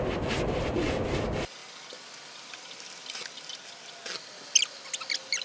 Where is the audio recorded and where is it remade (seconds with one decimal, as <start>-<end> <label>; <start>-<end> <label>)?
0.0-5.4 recorded